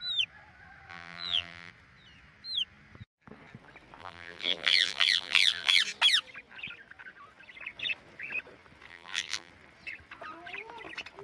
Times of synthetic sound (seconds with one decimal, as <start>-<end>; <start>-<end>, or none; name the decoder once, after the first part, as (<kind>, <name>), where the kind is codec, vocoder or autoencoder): 0.9-1.7 (vocoder, BigVGAN v2); 4.0-5.8; 8.9-9.5